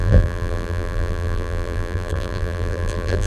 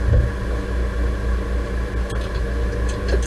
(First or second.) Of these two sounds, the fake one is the first